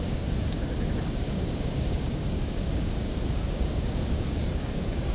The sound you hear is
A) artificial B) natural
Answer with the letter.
A